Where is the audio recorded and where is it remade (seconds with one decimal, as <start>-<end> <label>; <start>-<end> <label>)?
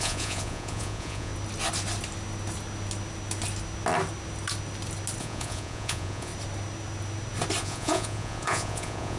0.0-1.3 remade; 1.3-5.2 recorded; 5.2-6.3 remade; 6.3-7.6 recorded; 7.6-9.2 remade